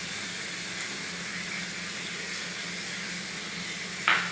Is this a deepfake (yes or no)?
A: no